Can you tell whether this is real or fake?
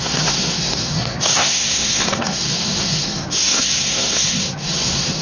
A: fake